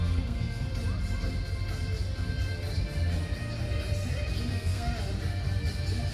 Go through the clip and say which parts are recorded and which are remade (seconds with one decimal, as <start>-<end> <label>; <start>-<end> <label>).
0.0-0.7 remade; 0.7-4.4 recorded; 4.4-4.9 remade; 4.9-6.1 recorded